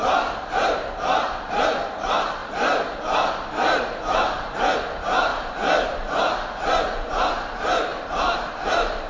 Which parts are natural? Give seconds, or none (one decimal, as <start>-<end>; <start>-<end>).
0.0-2.4; 4.7-5.3; 7.3-7.9; 8.5-9.1